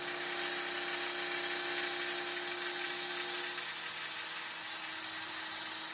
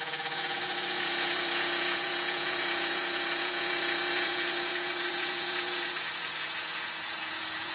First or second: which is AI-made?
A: second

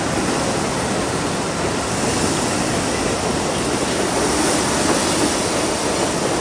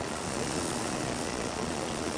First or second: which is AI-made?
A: second